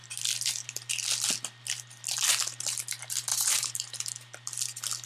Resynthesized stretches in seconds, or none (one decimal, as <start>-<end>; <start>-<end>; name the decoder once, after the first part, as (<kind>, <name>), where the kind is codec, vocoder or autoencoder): 3.3-4.0 (vocoder, BigVGAN v2)